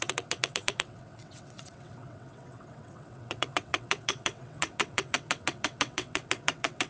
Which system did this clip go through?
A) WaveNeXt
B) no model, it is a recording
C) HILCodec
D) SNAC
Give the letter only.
A